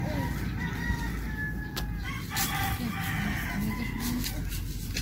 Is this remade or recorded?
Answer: recorded